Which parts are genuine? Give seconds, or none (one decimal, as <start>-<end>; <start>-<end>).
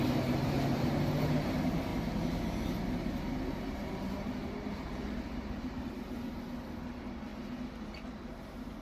1.9-2.8; 7.3-8.0